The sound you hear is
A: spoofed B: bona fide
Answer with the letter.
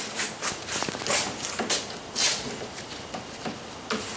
B